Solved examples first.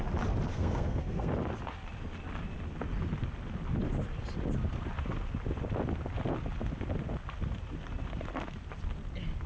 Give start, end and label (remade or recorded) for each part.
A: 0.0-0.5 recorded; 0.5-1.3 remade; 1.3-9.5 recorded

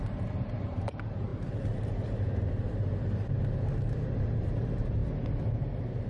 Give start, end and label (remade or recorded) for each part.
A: 0.0-5.0 remade; 5.0-6.1 recorded

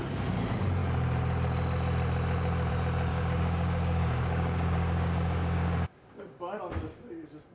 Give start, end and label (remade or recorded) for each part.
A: 0.0-3.1 recorded; 3.1-6.6 remade; 6.6-7.5 recorded

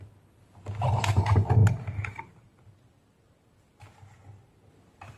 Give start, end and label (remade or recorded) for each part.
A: 0.0-5.2 recorded

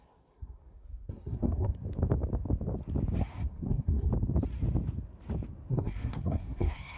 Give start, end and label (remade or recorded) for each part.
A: 0.0-1.8 remade; 1.8-3.2 recorded; 3.2-4.1 remade; 4.1-5.7 recorded; 5.7-7.0 remade

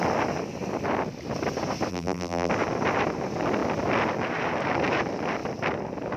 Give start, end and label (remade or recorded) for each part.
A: 0.0-1.9 recorded; 1.9-2.5 remade; 2.5-6.2 recorded

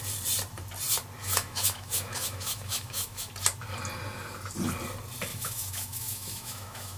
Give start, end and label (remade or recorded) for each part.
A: 0.0-1.2 recorded; 1.2-3.3 remade; 3.3-5.3 recorded; 5.3-7.0 remade